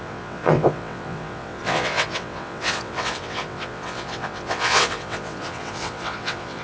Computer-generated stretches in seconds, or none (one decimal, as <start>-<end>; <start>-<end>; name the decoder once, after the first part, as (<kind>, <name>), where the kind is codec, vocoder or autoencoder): 0.0-6.6 (vocoder, WaveNeXt)